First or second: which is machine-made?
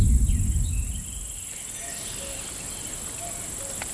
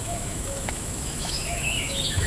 second